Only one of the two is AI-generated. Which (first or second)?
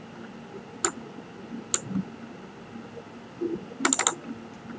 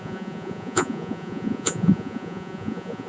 second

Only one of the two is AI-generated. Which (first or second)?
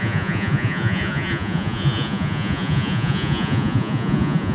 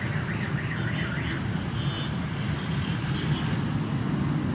first